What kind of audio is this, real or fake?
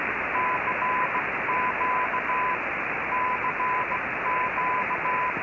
real